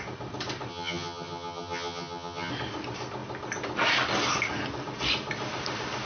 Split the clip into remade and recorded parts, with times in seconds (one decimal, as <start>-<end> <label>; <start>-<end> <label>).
0.0-0.7 recorded; 0.7-2.5 remade; 2.5-6.1 recorded